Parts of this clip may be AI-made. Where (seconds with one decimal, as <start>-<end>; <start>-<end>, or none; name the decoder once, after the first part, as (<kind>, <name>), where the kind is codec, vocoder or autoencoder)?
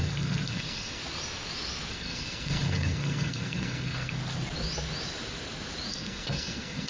0.0-1.0 (codec, SNAC); 1.9-4.2; 5.9-6.9